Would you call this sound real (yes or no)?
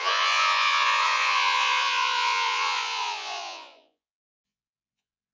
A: no